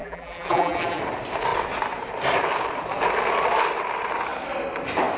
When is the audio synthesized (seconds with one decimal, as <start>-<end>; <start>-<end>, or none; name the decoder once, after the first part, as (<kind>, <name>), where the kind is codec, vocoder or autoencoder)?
0.0-1.0 (vocoder, BigVGAN v2)